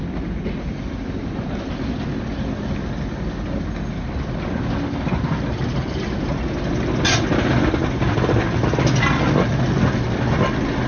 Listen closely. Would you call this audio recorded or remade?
recorded